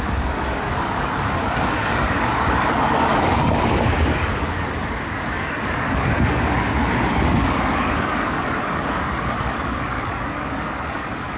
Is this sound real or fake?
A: fake